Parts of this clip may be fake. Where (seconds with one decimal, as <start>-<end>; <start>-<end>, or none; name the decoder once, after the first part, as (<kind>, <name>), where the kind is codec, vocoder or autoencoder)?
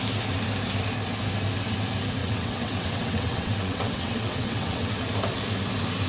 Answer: 2.2-5.0 (vocoder, WaveNeXt)